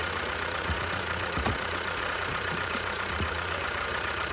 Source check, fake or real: fake